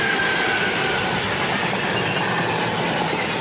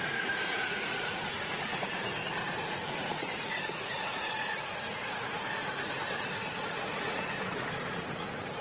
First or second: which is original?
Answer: first